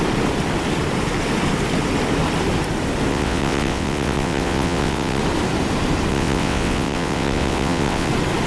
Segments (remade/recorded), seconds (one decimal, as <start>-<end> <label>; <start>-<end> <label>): 0.0-3.1 recorded; 3.1-5.2 remade; 5.2-6.1 recorded; 6.1-8.1 remade; 8.1-8.5 recorded